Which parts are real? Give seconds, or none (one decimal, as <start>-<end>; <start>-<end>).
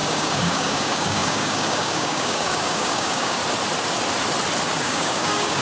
3.4-4.8